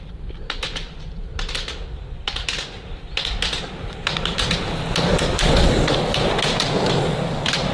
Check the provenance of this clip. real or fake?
real